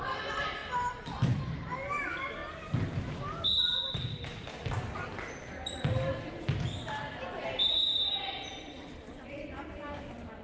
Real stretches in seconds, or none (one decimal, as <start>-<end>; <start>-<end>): 0.0-10.4